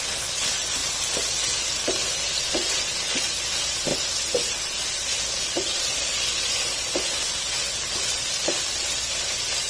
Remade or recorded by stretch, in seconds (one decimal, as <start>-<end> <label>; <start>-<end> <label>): 0.0-9.7 recorded